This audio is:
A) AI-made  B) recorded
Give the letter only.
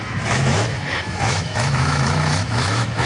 A